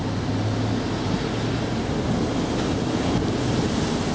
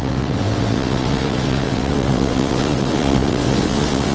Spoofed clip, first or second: second